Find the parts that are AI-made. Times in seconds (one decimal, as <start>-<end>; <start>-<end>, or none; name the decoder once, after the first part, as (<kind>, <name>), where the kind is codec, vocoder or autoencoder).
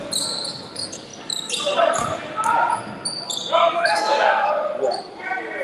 3.6-4.5 (codec, SNAC)